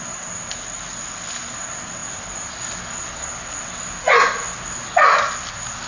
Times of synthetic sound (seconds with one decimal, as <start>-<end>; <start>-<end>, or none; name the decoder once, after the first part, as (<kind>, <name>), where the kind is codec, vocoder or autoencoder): none